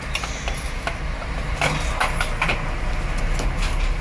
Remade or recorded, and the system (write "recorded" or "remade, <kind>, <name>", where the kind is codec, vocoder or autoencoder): recorded